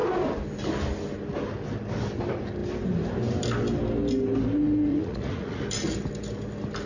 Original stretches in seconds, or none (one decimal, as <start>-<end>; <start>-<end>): 0.0-4.9; 5.6-6.9